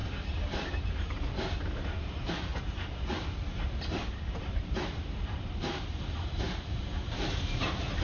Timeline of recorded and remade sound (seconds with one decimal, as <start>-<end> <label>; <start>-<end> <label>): 0.0-2.5 remade; 2.5-4.5 recorded; 4.5-8.0 remade